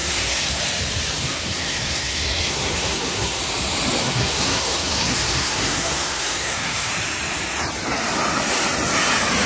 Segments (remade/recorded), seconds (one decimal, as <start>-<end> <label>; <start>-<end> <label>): 0.0-0.6 remade; 0.6-1.2 recorded; 1.2-3.4 remade; 3.4-4.0 recorded; 4.0-6.9 remade; 6.9-9.5 recorded